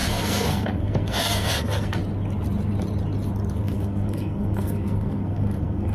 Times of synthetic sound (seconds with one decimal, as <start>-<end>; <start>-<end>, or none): 0.0-2.0; 3.6-5.9